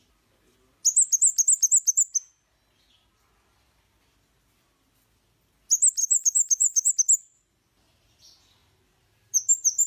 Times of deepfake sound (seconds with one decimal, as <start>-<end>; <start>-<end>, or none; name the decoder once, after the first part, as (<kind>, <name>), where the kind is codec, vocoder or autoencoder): 6.0-6.9 (autoencoder, DAC-VAE)